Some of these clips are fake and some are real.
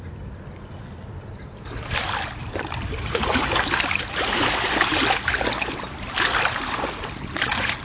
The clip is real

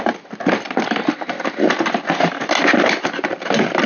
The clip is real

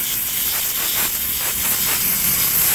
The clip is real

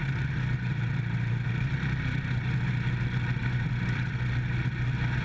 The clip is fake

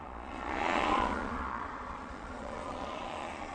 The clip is fake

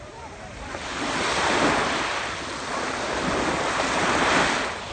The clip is real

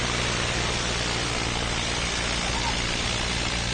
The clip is real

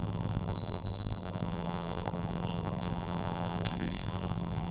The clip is fake